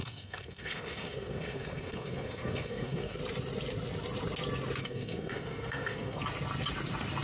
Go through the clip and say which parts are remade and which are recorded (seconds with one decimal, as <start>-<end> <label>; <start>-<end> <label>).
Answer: 0.0-3.2 remade; 3.2-4.8 recorded; 4.8-6.2 remade; 6.2-7.2 recorded